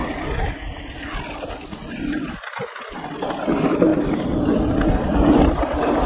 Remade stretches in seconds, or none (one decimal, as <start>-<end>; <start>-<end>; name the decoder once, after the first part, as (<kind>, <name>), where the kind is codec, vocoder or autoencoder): none